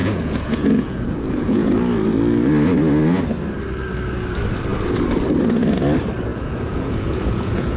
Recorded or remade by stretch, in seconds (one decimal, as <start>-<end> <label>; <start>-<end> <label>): 0.0-1.7 remade; 1.7-6.3 recorded; 6.3-7.8 remade